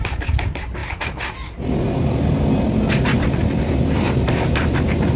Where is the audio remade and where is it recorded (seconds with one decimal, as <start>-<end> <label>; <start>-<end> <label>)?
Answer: 0.0-0.8 remade; 0.8-3.9 recorded; 3.9-5.2 remade

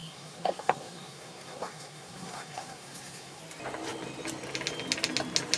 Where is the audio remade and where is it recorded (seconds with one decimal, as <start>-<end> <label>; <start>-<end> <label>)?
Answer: 0.0-3.4 remade; 3.4-5.6 recorded

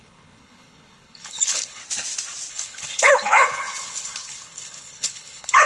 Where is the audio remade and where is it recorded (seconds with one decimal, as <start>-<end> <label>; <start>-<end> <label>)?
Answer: 0.0-1.8 remade; 1.8-2.5 recorded; 2.5-5.7 remade

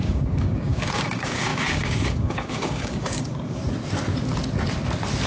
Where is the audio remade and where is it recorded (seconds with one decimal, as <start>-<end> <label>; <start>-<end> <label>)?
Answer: 0.0-3.6 remade; 3.6-5.3 recorded

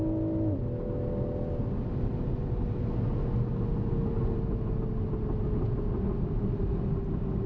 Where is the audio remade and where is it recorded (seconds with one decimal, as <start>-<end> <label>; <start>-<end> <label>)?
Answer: 0.0-7.5 recorded